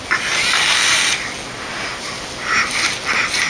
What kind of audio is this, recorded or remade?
recorded